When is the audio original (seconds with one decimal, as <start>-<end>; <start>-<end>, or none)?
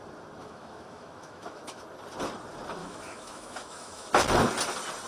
0.0-0.4; 1.8-2.8; 4.1-5.1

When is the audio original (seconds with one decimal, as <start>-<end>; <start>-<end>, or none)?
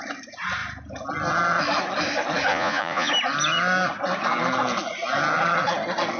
0.0-2.5; 3.1-6.2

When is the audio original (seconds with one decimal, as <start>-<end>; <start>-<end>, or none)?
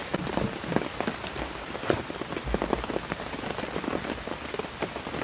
0.0-5.2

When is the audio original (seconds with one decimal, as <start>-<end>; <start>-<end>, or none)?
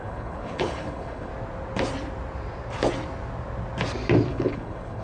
1.3-4.3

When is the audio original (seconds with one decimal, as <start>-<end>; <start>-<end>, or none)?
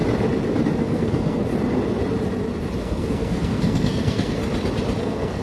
0.0-0.8; 1.4-2.8; 4.4-5.0